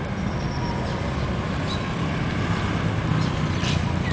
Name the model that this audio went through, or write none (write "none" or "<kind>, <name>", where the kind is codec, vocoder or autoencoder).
none